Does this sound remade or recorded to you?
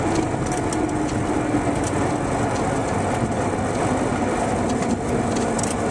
recorded